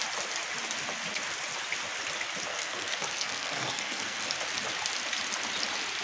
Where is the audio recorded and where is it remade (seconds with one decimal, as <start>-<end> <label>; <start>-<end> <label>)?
0.0-2.5 recorded; 2.5-4.2 remade; 4.2-6.0 recorded